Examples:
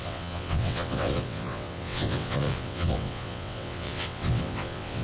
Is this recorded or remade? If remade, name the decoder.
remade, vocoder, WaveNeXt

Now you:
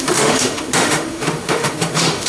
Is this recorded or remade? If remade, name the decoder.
remade, autoencoder, DAC-VAE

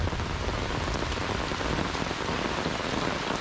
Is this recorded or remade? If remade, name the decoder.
recorded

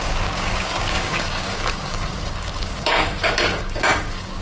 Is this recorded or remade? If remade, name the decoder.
remade, codec, DAC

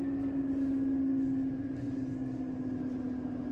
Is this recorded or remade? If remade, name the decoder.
recorded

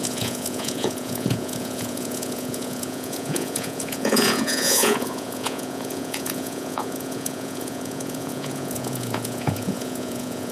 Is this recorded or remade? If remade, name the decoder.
remade, vocoder, Vocos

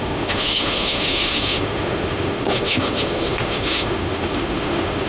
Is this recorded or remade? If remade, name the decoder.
remade, autoencoder, DAC-VAE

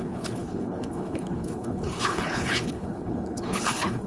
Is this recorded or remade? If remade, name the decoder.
remade, codec, HILCodec